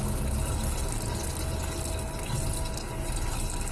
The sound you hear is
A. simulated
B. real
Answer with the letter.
B